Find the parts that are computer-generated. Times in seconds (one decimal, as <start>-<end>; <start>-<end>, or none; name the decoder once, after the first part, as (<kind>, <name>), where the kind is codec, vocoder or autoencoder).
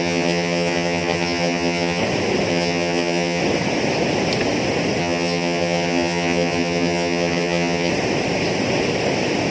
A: 0.0-2.0 (vocoder, HiFi-GAN); 2.5-3.4; 5.0-7.9